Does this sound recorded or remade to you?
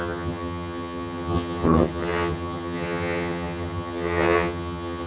remade